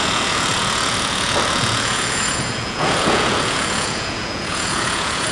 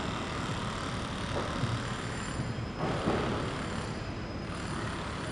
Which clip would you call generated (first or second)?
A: first